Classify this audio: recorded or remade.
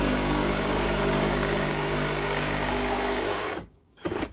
remade